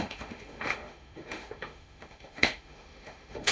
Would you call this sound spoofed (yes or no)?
yes